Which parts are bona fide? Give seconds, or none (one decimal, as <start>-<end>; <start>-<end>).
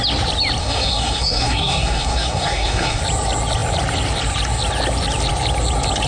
0.0-0.6; 3.0-6.1